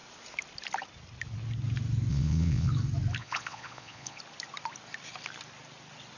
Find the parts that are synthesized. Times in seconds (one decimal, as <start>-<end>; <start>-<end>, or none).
2.1-2.7; 3.2-4.2